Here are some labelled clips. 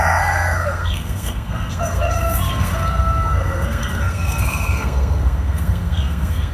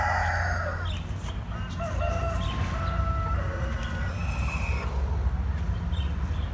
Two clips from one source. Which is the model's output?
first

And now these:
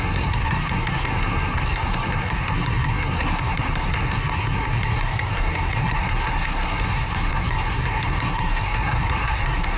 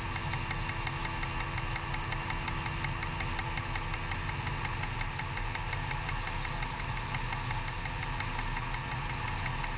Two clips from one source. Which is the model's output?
first